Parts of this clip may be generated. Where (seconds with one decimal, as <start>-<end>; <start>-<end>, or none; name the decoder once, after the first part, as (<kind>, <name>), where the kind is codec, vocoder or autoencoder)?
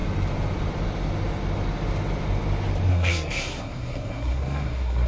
2.9-5.1 (codec, SNAC)